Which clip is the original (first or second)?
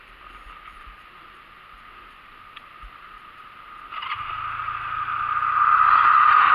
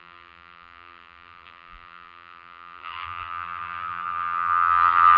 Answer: first